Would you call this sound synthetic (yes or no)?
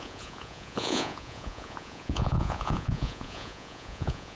yes